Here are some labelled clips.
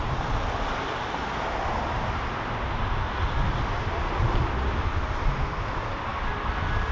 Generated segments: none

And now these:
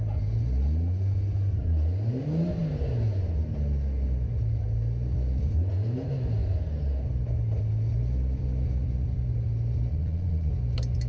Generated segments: 9.9-10.5